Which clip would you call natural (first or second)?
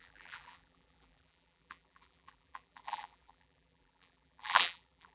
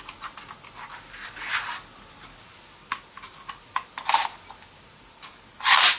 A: second